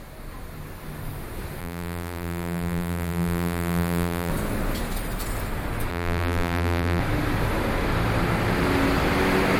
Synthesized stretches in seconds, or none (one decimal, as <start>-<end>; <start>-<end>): 1.6-4.3; 5.9-7.0